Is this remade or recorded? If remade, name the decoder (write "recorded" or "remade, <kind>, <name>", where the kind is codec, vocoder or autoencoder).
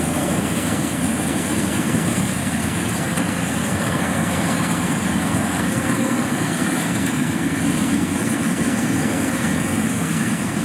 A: remade, codec, SNAC